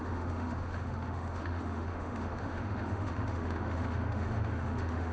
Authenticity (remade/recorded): remade